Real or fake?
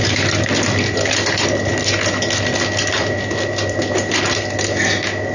real